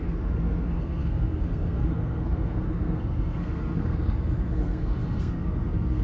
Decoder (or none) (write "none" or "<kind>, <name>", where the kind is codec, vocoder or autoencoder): codec, SNAC